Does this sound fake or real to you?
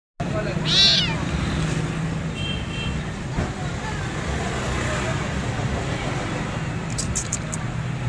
real